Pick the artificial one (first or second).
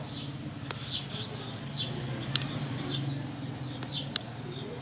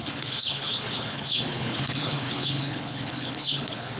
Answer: second